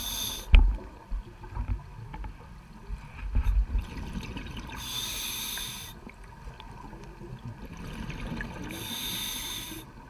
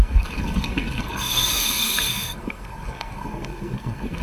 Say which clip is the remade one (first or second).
second